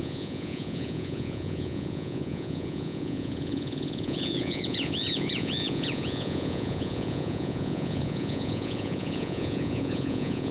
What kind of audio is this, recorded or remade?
remade